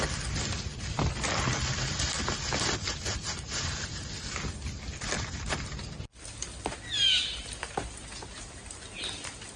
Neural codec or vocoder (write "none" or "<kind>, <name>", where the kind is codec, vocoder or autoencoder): none